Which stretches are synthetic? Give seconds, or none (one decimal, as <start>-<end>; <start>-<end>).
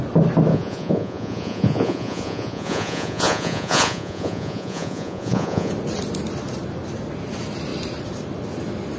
0.5-5.7